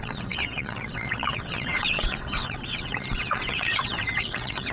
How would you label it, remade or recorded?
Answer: remade